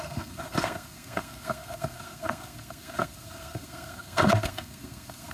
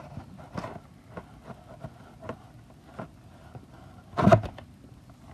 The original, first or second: second